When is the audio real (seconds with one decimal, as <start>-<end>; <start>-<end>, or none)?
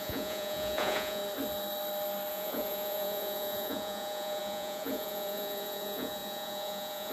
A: 1.2-2.3